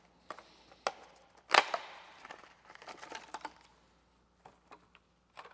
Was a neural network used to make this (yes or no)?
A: no